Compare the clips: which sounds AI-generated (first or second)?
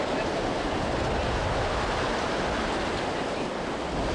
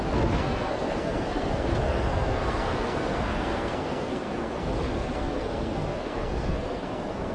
second